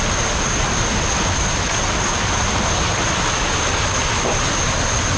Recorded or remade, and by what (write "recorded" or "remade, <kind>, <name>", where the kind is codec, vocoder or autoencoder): recorded